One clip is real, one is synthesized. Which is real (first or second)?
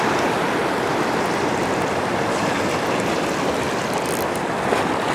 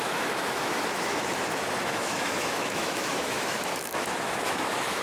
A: first